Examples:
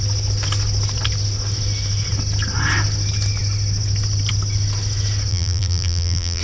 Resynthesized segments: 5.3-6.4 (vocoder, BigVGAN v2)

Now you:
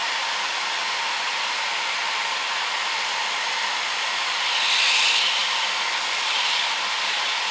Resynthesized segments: none

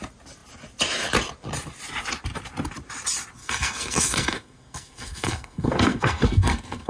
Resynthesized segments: 3.4-6.9 (codec, SNAC)

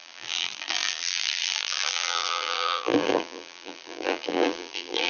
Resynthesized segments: 0.0-5.1 (vocoder, BigVGAN v2)

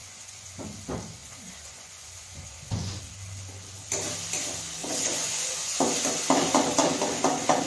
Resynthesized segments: 0.0-0.6 (vocoder, Vocos); 1.2-3.0; 4.8-5.8